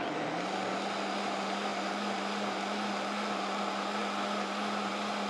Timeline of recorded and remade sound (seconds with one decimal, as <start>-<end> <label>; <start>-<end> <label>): 0.0-5.3 recorded